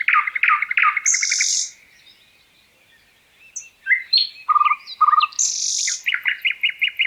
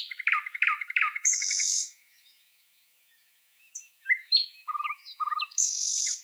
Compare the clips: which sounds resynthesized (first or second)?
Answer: second